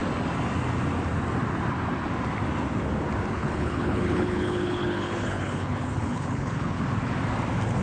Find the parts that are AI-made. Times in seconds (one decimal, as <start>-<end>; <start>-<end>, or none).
3.3-6.8